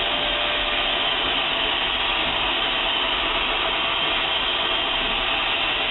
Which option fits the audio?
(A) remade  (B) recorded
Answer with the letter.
B